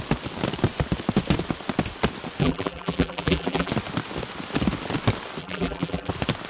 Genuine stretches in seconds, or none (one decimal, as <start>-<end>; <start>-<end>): 0.0-2.4; 3.7-5.4; 6.1-6.5